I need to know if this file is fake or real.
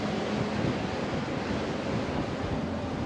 real